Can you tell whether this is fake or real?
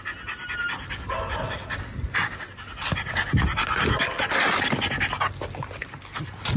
real